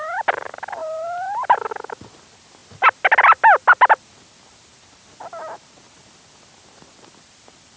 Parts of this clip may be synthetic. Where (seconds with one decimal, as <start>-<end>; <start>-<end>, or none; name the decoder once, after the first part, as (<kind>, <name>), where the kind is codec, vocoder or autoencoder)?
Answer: 0.8-1.7 (vocoder, BigVGAN v2)